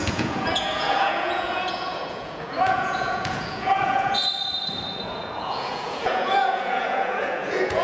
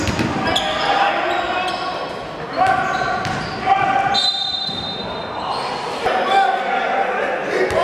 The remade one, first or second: first